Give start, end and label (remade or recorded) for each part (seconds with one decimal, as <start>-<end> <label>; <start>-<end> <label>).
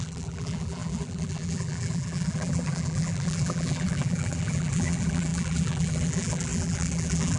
0.0-7.4 remade